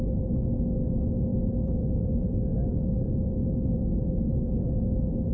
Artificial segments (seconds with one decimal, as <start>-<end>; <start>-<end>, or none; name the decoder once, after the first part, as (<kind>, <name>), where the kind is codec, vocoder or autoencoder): 1.3-3.5 (vocoder, BigVGAN v2); 3.9-5.3